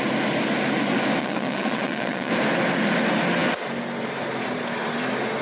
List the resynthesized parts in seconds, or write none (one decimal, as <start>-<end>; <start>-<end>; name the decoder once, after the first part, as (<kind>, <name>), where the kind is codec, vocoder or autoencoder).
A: 1.2-2.3 (vocoder, WaveNeXt)